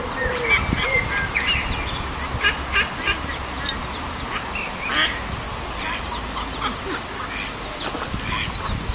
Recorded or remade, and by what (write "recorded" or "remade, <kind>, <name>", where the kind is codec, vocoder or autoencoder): recorded